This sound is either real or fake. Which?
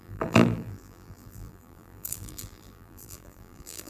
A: fake